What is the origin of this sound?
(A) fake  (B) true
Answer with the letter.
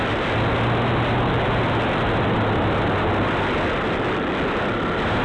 B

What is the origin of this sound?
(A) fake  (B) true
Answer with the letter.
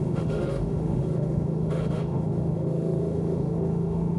A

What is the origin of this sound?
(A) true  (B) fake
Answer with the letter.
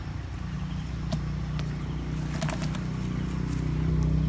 A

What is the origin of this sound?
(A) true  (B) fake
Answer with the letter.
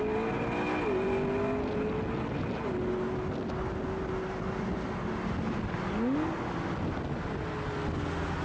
A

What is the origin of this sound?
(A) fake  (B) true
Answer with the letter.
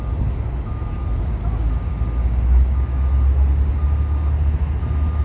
B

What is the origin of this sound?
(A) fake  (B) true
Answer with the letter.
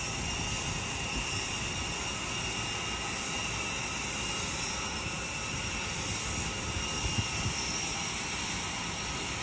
B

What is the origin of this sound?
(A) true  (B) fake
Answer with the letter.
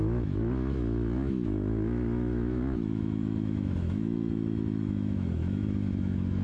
B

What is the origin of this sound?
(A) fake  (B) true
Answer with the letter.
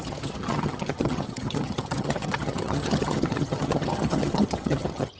A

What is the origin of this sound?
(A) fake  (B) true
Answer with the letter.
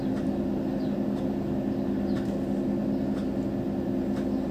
B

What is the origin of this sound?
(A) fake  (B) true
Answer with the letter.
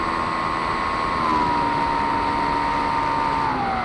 B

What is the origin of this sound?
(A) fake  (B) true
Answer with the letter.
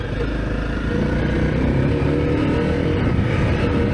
B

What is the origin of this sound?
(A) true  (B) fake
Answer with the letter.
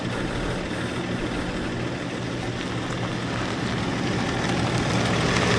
A